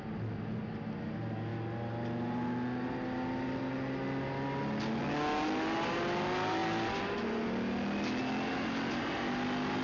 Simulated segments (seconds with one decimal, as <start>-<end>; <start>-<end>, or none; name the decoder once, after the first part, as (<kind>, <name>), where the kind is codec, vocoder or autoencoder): none